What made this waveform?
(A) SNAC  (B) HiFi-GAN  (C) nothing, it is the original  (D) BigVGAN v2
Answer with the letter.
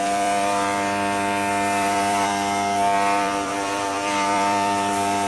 D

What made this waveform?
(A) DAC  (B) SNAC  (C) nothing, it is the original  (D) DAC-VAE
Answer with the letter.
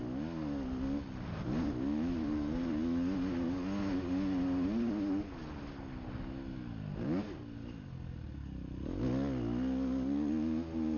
C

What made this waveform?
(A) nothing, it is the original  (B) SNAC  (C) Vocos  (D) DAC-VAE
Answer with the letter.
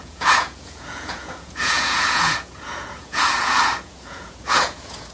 C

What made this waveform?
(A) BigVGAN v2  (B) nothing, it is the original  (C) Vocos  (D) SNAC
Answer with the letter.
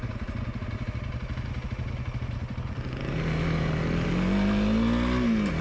B